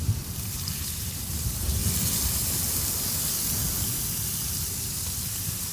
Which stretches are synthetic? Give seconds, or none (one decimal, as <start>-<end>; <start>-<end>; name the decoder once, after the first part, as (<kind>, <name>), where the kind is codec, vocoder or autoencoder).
0.0-1.8 (vocoder, BigVGAN v2); 5.2-5.7

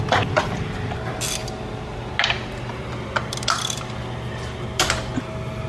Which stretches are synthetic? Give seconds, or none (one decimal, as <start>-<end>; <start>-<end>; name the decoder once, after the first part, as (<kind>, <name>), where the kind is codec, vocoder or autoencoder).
none

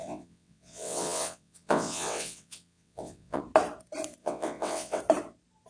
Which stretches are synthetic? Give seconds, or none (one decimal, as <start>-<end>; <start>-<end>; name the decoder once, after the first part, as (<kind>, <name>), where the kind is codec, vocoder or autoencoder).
0.0-3.4 (vocoder, WaveNeXt); 4.2-5.0

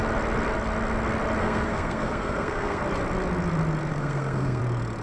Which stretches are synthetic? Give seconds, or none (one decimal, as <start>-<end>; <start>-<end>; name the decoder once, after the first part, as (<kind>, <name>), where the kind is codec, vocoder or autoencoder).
1.4-2.8 (codec, SNAC); 3.9-4.6

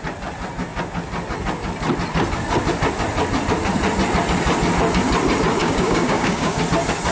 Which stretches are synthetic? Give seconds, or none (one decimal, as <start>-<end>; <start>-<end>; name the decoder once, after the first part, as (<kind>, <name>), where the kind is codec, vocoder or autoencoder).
5.6-6.6 (codec, DAC)

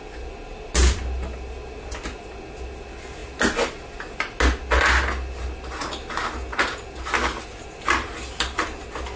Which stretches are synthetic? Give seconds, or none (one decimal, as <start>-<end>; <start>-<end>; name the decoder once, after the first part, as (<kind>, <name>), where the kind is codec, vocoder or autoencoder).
none